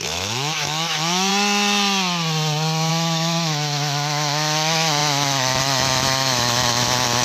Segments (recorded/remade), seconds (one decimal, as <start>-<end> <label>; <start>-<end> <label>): 0.0-1.3 remade; 1.3-2.9 recorded; 2.9-7.2 remade